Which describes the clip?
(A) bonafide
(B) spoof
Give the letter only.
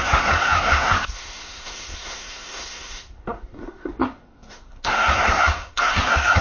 B